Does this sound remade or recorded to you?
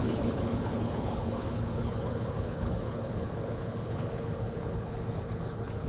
remade